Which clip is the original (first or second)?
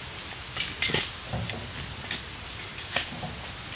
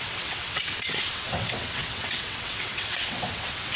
first